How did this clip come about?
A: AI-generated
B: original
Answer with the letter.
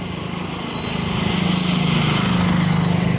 B